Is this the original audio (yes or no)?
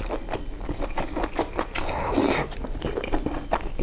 yes